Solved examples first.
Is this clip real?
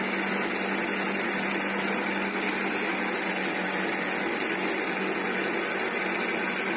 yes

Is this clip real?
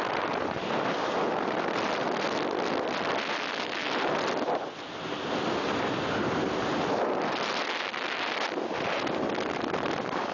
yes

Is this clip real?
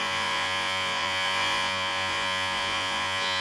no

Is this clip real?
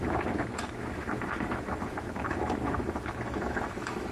no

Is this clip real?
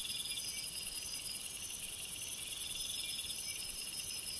yes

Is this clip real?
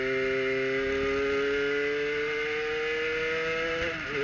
yes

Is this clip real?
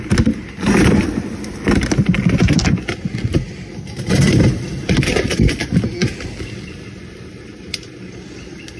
yes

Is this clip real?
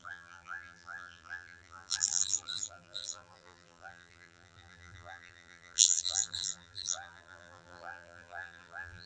no